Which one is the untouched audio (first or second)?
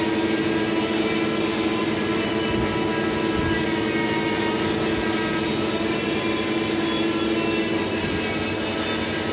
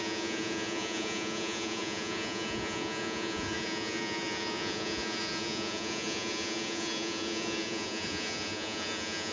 first